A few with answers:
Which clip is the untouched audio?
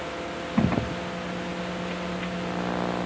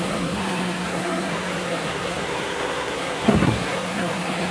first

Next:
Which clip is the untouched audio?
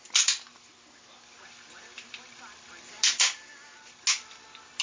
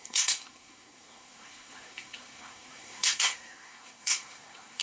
first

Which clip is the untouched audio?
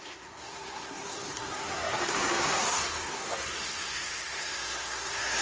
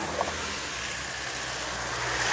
second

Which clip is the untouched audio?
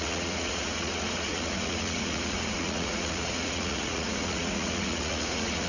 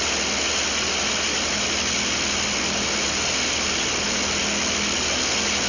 second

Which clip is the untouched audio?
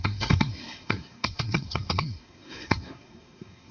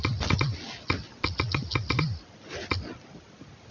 second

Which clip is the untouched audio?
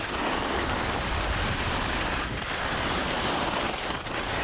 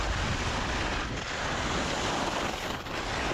second